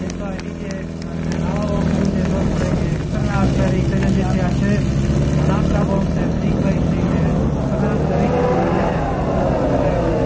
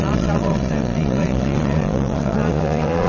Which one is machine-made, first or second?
second